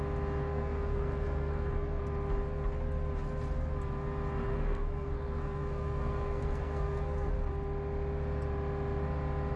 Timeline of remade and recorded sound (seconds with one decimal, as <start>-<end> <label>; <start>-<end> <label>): 0.0-0.5 recorded; 0.5-2.0 remade; 2.0-4.5 recorded; 4.5-7.3 remade; 7.3-9.6 recorded